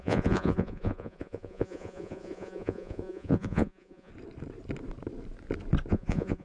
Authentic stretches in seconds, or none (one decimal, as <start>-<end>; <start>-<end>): 4.1-5.9